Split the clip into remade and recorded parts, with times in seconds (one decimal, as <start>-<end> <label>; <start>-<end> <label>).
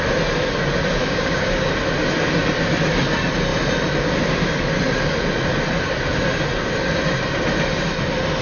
0.0-1.0 recorded; 1.0-1.7 remade; 1.7-8.4 recorded